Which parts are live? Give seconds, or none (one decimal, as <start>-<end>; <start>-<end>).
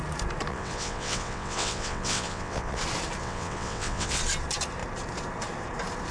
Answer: 0.0-0.5; 2.8-3.2; 4.2-6.1